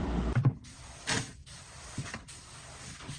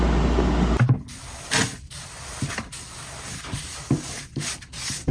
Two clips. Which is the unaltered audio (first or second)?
second